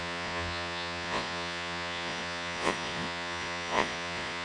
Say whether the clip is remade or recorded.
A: remade